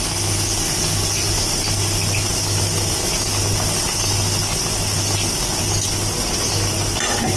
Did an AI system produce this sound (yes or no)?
no